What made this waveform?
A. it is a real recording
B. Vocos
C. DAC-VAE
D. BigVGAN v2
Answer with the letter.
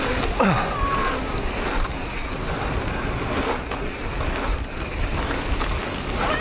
A